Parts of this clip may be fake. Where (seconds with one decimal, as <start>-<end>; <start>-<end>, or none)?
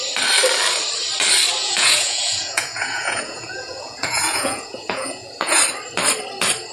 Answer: 1.6-5.6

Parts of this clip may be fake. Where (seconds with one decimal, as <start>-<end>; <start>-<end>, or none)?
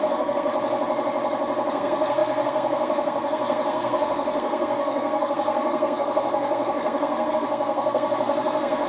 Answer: 0.0-0.5; 1.7-8.9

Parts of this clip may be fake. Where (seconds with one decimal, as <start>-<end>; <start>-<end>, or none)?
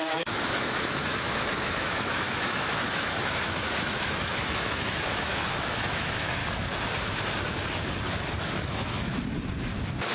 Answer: 0.0-6.4; 8.4-9.1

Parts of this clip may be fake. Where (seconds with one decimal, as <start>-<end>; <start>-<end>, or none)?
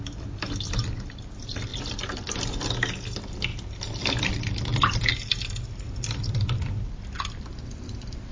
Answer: 1.7-2.7; 3.5-4.2; 4.7-8.3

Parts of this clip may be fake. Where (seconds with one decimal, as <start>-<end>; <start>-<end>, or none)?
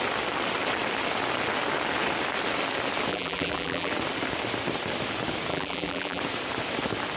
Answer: 3.1-3.9; 5.5-6.2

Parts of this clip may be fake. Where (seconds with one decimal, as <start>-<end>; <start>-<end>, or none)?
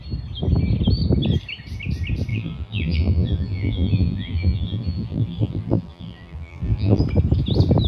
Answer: 2.3-7.0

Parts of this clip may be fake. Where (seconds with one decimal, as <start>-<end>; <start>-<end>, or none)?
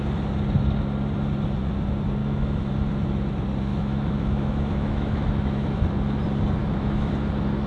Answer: 2.2-2.7; 3.7-5.8; 6.6-7.1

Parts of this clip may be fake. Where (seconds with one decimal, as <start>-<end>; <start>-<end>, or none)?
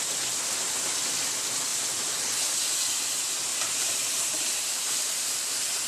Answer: 1.7-2.2; 3.5-5.2